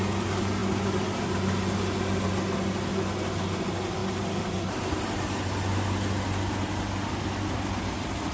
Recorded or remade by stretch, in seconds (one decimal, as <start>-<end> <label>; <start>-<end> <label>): 0.0-8.3 recorded